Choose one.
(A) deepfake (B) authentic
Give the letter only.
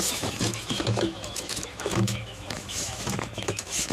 A